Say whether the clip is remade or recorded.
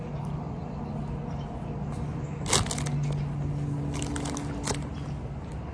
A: recorded